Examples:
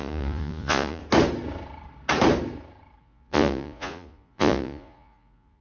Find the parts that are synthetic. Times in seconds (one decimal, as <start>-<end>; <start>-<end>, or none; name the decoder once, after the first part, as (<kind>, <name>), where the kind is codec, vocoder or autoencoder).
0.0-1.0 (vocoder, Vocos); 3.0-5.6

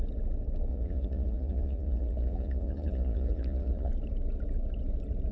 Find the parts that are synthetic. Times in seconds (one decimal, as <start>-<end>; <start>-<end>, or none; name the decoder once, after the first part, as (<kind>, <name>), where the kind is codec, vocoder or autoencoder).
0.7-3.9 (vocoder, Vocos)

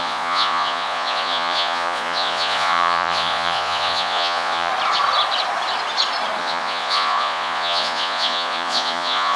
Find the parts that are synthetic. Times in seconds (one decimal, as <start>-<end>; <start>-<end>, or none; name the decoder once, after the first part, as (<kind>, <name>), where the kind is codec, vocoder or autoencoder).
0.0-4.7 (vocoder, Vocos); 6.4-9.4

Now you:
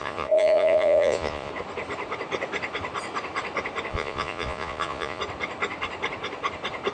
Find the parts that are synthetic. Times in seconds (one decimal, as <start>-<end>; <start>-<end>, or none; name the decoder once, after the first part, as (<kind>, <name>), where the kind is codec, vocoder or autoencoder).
0.0-1.5 (vocoder, Vocos); 3.9-5.2

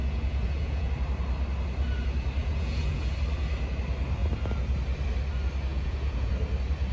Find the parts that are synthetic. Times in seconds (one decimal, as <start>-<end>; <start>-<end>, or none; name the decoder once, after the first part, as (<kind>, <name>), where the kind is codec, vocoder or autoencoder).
0.0-0.9 (vocoder, Vocos); 2.4-3.1; 5.7-6.3

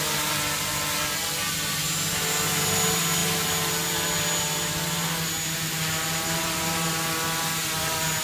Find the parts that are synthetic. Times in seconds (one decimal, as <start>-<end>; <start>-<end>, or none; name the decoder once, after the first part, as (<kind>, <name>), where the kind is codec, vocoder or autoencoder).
none